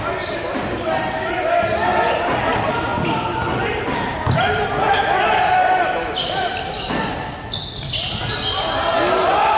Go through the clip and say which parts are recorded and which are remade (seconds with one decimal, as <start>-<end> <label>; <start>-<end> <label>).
0.0-9.6 recorded